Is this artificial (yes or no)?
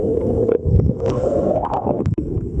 yes